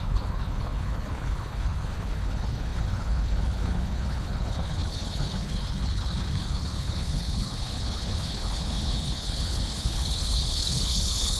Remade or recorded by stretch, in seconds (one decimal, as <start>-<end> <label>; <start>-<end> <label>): 0.0-11.4 remade

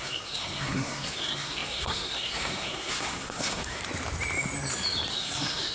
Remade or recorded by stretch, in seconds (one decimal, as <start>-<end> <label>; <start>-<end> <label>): 0.0-3.8 remade; 3.8-5.1 recorded; 5.1-5.7 remade

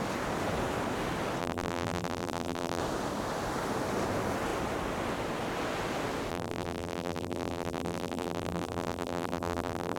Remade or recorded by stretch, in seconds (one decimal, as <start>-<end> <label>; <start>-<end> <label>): 0.0-1.4 recorded; 1.4-2.8 remade; 2.8-6.3 recorded; 6.3-10.0 remade

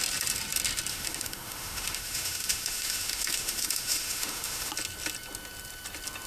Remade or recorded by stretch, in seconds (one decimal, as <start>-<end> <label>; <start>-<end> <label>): 0.0-0.9 recorded; 0.9-4.7 remade; 4.7-6.3 recorded

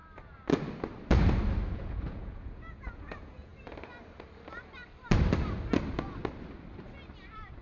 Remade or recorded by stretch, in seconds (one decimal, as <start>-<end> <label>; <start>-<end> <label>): 0.0-1.7 recorded; 1.7-3.5 remade; 3.5-7.6 recorded

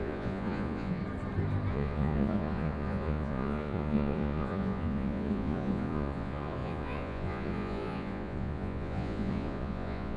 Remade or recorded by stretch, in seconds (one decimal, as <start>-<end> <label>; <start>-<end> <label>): 0.0-1.0 remade; 1.0-1.7 recorded; 1.7-10.2 remade